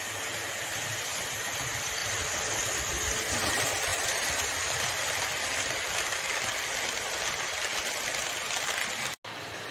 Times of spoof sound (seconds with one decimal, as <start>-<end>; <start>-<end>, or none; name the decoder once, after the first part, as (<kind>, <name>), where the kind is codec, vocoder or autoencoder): none